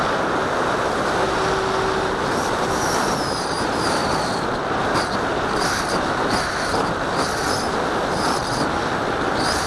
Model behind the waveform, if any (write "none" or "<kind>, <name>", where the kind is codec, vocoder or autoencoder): none